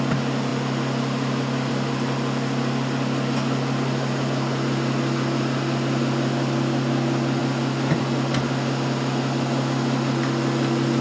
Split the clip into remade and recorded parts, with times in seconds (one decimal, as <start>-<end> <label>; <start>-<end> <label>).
0.0-11.0 recorded